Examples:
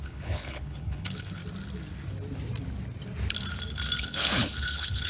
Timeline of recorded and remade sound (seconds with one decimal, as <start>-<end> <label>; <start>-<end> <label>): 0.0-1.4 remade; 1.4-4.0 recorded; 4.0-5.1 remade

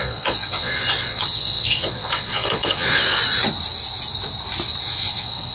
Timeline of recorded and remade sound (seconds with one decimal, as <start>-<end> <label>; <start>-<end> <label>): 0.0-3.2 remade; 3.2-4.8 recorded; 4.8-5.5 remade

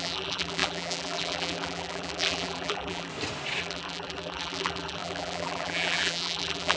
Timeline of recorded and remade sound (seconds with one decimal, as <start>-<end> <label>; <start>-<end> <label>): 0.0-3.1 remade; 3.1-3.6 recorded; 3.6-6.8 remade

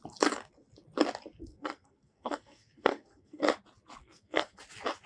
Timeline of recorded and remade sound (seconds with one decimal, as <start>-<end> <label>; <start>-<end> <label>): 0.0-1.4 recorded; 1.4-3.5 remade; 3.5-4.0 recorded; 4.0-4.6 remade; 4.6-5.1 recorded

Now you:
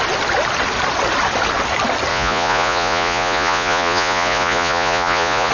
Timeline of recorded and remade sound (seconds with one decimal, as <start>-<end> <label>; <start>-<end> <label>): 0.0-2.1 recorded; 2.1-5.5 remade

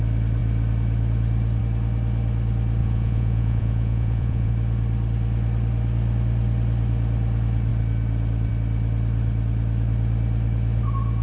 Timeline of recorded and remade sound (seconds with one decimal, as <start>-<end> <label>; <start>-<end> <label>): 0.0-2.8 recorded; 2.8-4.5 remade; 4.5-11.2 recorded

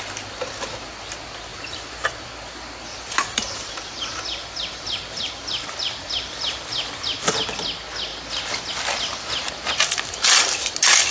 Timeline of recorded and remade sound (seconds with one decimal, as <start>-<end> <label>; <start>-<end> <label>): 0.0-1.5 recorded; 1.5-2.1 remade; 2.1-2.9 recorded; 2.9-7.6 remade; 7.6-11.1 recorded